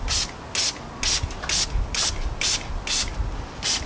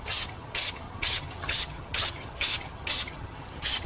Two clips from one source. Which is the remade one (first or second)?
second